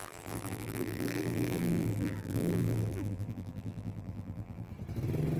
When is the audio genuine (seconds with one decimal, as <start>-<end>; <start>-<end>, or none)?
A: 4.7-5.4